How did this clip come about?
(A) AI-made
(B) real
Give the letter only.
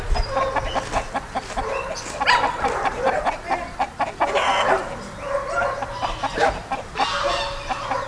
B